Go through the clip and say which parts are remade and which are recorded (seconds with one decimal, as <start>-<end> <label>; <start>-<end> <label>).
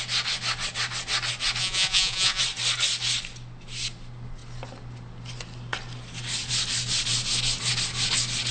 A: 0.0-1.6 recorded; 1.6-2.4 remade; 2.4-8.5 recorded